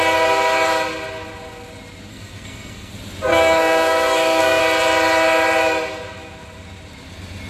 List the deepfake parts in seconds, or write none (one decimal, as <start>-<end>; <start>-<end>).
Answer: 2.1-2.9; 3.3-4.6